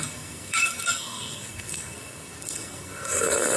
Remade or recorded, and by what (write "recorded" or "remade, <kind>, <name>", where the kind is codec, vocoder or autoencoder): remade, codec, SNAC